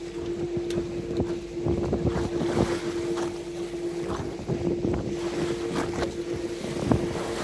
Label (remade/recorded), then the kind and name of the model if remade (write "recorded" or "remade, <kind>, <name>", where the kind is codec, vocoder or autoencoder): recorded